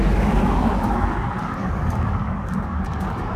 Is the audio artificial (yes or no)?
yes